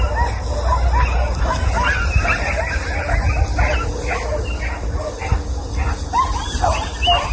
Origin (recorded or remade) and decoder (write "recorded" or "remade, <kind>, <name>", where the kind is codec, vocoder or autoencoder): recorded